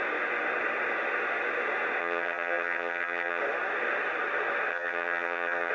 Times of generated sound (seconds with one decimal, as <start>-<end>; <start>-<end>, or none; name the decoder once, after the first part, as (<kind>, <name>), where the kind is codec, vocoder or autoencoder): 2.0-3.4 (vocoder, HiFi-GAN); 4.7-5.7